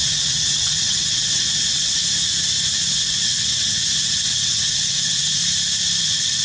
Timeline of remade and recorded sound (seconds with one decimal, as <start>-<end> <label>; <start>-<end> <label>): 0.0-2.0 remade; 2.0-2.9 recorded; 2.9-5.4 remade; 5.4-6.0 recorded; 6.0-6.4 remade

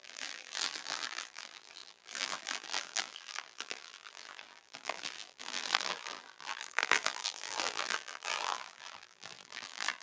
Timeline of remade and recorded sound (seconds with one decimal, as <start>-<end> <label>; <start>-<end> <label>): 0.0-10.0 remade

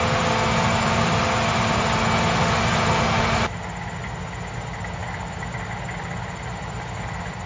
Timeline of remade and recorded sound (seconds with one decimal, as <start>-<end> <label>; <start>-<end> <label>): 0.0-7.5 recorded

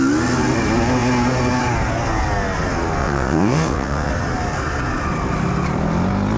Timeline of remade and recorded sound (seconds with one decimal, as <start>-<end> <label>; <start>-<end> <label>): 0.0-3.0 recorded; 3.0-4.1 remade; 4.1-6.4 recorded

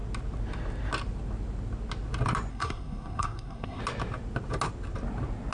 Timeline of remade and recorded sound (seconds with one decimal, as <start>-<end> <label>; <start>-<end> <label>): 0.0-2.5 recorded; 2.5-3.8 remade; 3.8-5.5 recorded

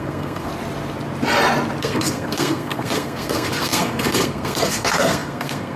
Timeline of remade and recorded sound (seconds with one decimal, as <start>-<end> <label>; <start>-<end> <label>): 0.0-0.5 remade; 0.5-1.8 recorded; 1.8-5.8 remade

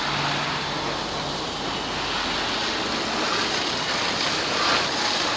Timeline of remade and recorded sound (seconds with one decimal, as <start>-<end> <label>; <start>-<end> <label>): 0.0-5.4 recorded

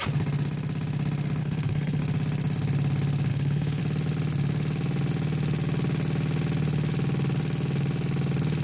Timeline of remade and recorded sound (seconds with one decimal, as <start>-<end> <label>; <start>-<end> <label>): 0.0-1.4 recorded; 1.4-2.0 remade; 2.0-3.3 recorded; 3.3-3.8 remade; 3.8-8.6 recorded